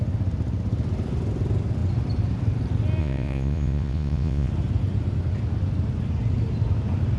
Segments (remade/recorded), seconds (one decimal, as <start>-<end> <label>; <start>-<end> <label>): 0.0-3.0 recorded; 3.0-4.5 remade; 4.5-7.2 recorded